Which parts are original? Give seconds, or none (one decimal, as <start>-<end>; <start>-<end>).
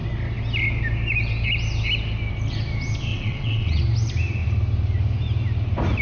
0.0-3.1; 3.8-6.0